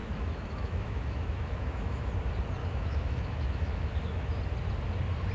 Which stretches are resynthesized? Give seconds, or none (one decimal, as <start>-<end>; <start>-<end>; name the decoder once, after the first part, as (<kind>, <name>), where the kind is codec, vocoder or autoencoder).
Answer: 0.0-2.1 (autoencoder, DAC-VAE); 2.6-4.4